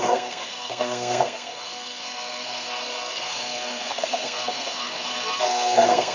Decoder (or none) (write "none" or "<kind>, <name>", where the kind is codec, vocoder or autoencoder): codec, SNAC